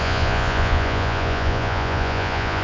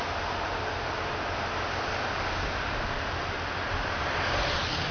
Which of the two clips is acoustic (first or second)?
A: second